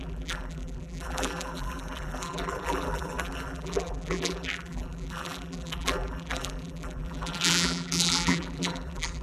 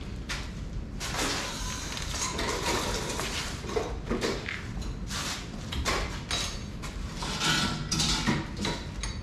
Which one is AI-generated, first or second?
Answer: first